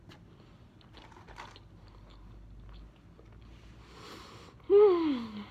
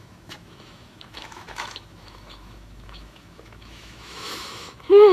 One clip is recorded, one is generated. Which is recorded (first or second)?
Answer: first